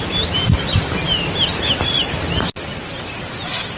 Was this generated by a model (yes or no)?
no